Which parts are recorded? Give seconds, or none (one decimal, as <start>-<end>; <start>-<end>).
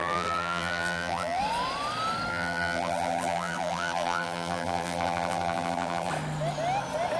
1.4-2.3; 6.1-7.2